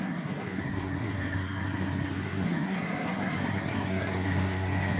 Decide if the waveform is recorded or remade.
remade